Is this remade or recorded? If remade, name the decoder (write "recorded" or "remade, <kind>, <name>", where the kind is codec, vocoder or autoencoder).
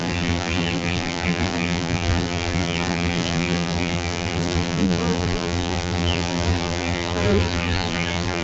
remade, vocoder, BigVGAN v2